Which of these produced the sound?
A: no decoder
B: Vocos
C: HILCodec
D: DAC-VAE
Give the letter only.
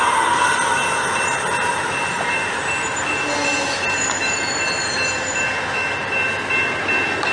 A